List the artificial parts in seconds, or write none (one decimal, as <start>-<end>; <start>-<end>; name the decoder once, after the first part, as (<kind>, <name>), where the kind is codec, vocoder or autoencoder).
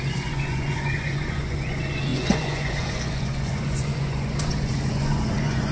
0.0-5.7 (vocoder, Vocos)